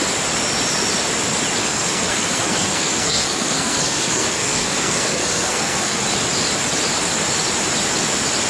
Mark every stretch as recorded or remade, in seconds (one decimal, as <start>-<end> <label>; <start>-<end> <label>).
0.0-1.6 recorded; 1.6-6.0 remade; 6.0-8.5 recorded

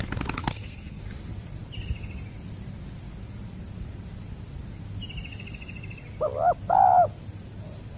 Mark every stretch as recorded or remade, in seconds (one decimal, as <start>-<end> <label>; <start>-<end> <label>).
0.0-0.4 recorded; 0.4-1.0 remade; 1.0-8.0 recorded

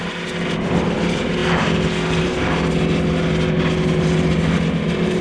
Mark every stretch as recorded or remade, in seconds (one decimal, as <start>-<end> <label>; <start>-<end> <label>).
0.0-5.2 recorded